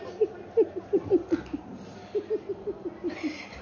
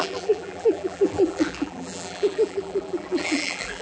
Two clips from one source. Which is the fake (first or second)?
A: second